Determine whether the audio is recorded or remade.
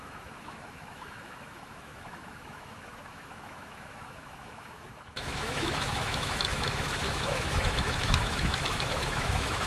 remade